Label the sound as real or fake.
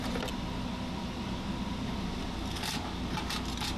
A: real